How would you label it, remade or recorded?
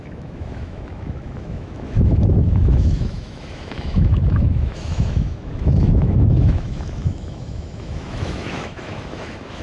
remade